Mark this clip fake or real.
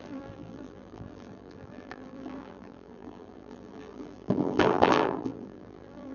fake